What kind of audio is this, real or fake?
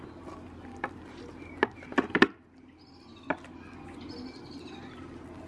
real